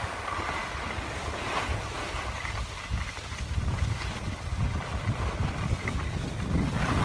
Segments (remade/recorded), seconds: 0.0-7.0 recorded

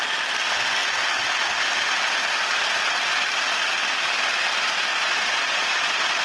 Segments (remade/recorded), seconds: 0.0-4.9 recorded; 4.9-6.2 remade

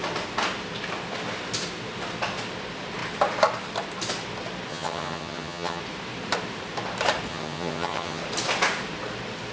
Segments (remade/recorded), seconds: 0.0-4.7 recorded; 4.7-5.8 remade; 5.8-7.3 recorded; 7.3-8.2 remade; 8.2-9.5 recorded

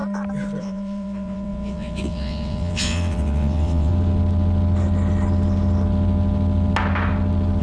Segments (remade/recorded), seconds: 0.0-0.6 recorded; 0.6-3.9 remade; 3.9-7.6 recorded